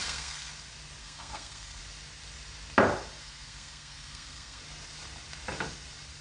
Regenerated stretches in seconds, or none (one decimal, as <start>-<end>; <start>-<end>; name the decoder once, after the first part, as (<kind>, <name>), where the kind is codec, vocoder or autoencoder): 0.0-0.5 (codec, SNAC); 1.0-1.8; 3.2-4.6